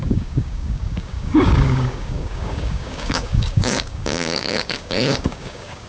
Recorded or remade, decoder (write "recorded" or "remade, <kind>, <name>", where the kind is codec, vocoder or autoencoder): remade, codec, DAC